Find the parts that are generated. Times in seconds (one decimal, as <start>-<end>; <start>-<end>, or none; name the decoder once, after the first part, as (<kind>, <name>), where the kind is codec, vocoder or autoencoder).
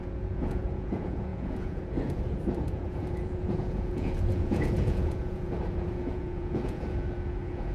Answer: 0.0-7.7 (vocoder, Vocos)